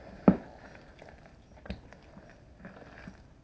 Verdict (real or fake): real